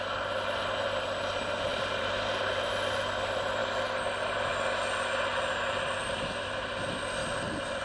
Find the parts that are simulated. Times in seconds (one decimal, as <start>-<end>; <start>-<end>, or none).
1.7-2.7